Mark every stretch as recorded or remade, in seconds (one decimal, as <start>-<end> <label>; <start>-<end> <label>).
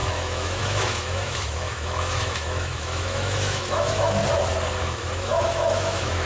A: 0.0-4.2 remade; 4.2-4.8 recorded; 4.8-6.3 remade